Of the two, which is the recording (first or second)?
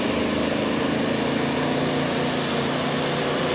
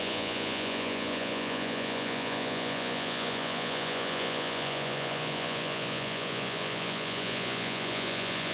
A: first